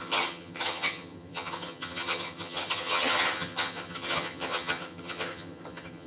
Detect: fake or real fake